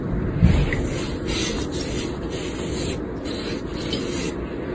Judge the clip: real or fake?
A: fake